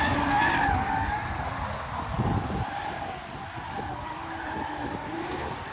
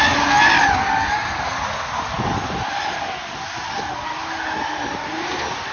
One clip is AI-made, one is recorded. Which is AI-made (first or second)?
first